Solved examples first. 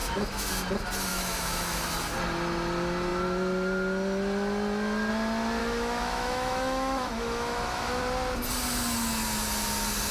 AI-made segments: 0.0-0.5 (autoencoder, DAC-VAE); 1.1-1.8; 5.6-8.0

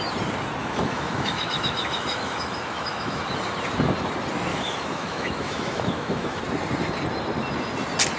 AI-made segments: 0.6-3.2 (autoencoder, DAC-VAE); 4.5-6.4

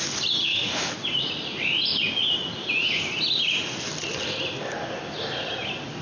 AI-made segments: 0.4-0.9 (autoencoder, DAC-VAE)

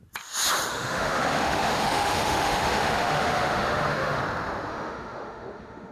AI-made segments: 0.7-4.2 (autoencoder, DAC-VAE); 4.7-5.9

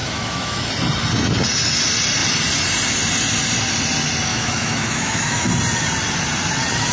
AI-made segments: 0.0-0.7 (autoencoder, DAC-VAE); 4.3-5.5

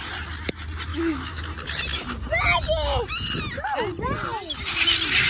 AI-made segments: 0.9-1.4 (autoencoder, DAC-VAE)